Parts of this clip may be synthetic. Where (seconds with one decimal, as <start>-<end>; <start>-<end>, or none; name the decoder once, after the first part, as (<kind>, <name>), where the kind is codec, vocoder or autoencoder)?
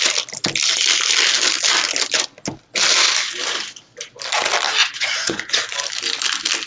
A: 4.8-5.6 (vocoder, Vocos)